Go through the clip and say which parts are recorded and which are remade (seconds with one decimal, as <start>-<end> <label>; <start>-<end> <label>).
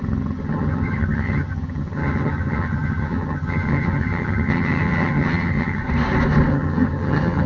0.0-5.8 remade; 5.8-6.5 recorded; 6.5-7.5 remade